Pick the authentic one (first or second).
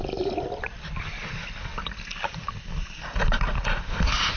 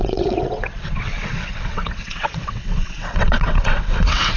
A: first